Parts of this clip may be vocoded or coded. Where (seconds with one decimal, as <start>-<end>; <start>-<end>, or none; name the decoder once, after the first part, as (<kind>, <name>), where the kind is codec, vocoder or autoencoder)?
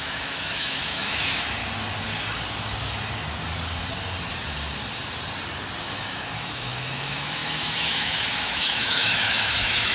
0.0-1.6 (autoencoder, DAC-VAE); 5.8-9.9